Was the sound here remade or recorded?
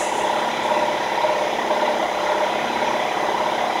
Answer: recorded